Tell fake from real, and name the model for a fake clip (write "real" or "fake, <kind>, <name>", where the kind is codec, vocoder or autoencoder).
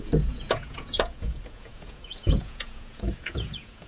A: fake, vocoder, Vocos